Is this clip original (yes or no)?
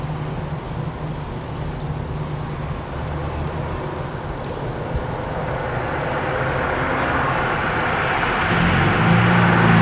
yes